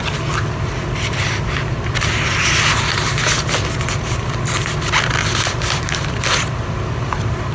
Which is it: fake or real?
real